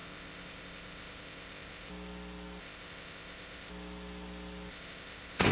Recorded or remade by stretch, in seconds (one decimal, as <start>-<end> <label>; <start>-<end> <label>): 0.0-1.9 remade; 1.9-2.6 recorded; 2.6-3.7 remade; 3.7-4.7 recorded; 4.7-5.5 remade